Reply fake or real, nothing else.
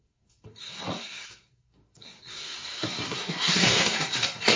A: fake